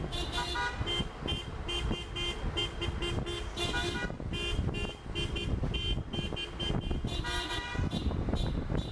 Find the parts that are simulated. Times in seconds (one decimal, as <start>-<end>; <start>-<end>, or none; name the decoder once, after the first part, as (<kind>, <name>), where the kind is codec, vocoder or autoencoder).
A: none